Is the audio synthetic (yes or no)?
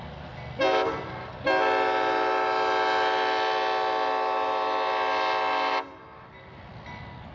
no